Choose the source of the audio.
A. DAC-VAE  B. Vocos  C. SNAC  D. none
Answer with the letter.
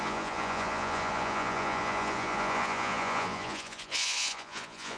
B